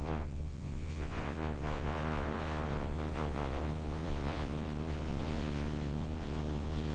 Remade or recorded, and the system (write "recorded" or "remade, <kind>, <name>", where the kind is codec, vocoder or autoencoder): remade, vocoder, Vocos